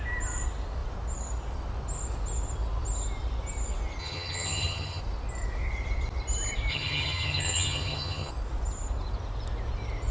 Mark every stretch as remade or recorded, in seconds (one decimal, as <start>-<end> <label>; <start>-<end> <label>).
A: 0.0-4.0 recorded; 4.0-5.0 remade; 5.0-6.7 recorded; 6.7-8.3 remade; 8.3-10.1 recorded